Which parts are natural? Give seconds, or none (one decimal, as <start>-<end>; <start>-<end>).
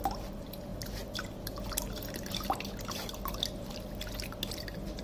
0.0-5.0